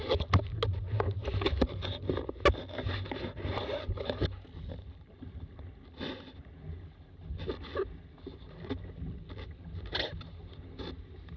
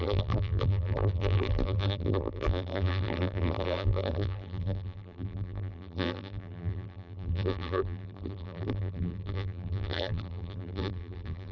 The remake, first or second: second